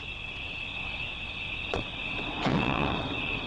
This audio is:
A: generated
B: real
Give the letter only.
A